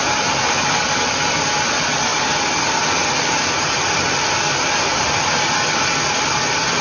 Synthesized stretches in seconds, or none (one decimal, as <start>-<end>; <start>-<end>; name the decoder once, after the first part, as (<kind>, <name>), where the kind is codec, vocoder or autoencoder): none